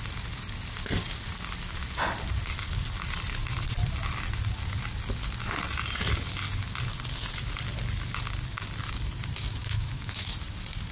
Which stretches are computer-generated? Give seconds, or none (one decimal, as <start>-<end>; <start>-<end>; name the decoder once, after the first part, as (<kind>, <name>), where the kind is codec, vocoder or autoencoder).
9.6-10.3 (autoencoder, DAC-VAE)